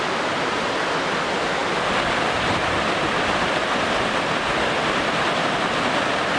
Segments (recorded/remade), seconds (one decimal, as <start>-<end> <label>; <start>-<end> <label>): 0.0-6.4 recorded